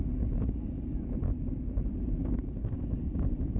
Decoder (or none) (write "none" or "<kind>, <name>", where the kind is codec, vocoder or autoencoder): none